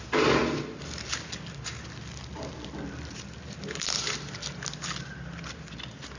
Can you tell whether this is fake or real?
real